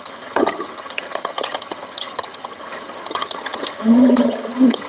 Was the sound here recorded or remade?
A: remade